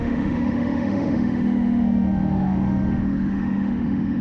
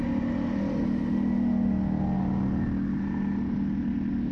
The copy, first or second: first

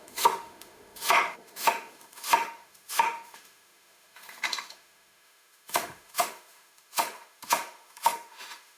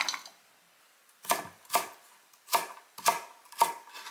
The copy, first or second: first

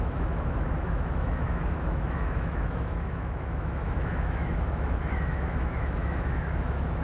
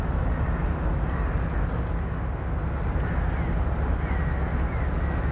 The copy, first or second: first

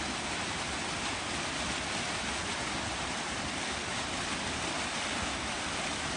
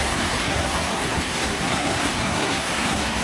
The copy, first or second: second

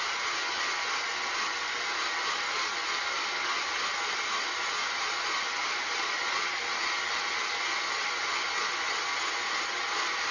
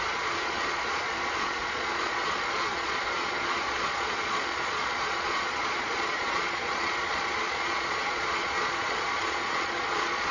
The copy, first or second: second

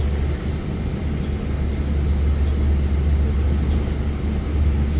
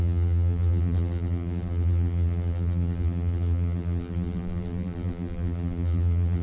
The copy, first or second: second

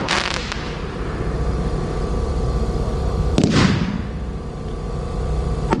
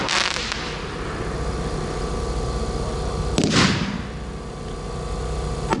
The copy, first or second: first